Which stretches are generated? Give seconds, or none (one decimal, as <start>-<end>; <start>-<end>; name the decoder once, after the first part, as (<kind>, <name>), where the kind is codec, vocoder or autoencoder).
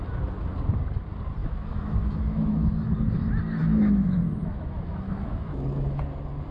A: 1.4-2.7 (autoencoder, DAC-VAE); 3.6-6.0